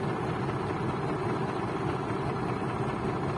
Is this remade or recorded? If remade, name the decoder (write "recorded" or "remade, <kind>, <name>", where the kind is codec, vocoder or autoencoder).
recorded